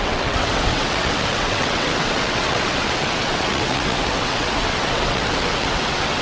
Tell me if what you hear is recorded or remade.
remade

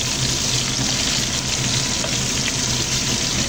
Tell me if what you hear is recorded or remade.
recorded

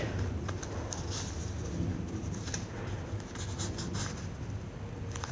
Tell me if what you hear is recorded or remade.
recorded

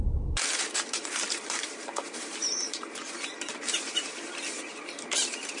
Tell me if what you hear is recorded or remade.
remade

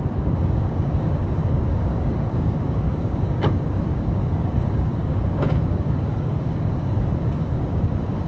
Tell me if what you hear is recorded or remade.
remade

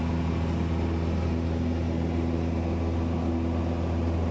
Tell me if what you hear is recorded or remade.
recorded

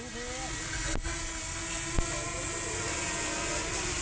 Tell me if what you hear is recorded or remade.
recorded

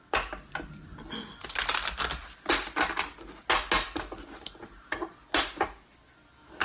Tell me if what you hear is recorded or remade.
recorded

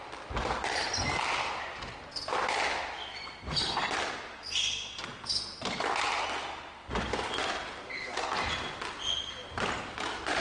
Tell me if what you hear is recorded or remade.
recorded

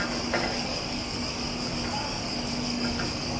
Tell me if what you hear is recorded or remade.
remade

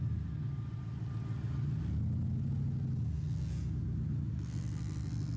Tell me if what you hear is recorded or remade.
recorded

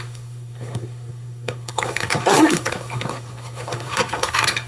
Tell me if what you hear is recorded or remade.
remade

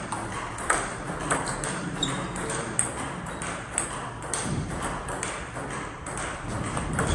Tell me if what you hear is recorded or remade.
recorded